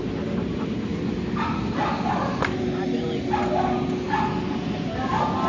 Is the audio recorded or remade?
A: recorded